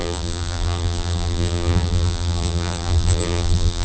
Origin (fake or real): fake